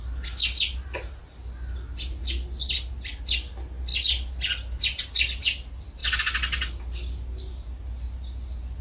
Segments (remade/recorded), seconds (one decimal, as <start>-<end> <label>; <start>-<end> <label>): 0.0-8.8 recorded